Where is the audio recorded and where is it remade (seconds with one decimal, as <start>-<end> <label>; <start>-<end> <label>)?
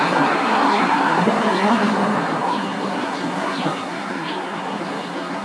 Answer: 0.0-5.4 remade